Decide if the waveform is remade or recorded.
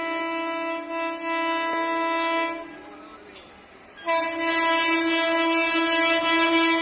recorded